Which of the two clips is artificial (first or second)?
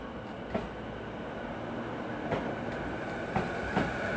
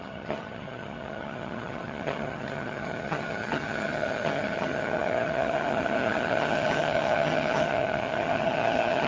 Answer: second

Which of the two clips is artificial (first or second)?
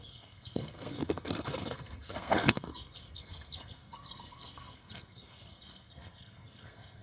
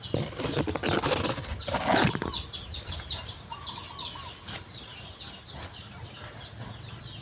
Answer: first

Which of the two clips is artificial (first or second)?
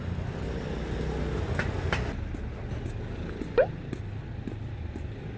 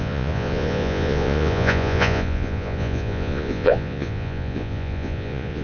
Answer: second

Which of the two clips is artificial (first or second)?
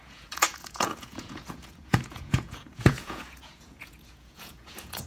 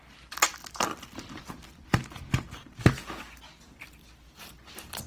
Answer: first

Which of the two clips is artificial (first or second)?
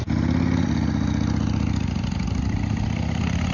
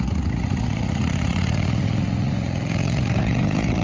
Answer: second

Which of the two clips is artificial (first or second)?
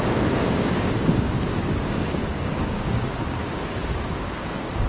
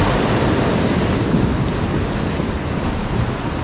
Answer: first